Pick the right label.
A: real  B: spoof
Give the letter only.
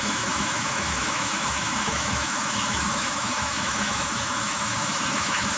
B